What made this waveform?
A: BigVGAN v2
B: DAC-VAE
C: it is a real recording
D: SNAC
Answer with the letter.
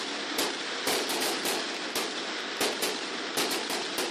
C